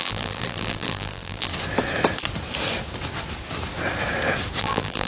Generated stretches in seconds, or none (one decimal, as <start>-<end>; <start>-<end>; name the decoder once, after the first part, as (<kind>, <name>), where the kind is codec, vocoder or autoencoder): 0.0-1.5 (vocoder, BigVGAN v2); 4.6-5.1